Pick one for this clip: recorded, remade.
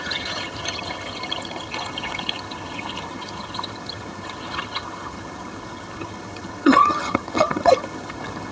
remade